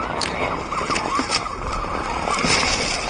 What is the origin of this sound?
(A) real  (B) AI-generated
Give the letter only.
A